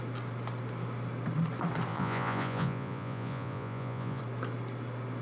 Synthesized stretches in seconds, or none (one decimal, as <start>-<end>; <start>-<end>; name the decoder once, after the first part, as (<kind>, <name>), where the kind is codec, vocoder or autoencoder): 1.9-4.2 (vocoder, Vocos)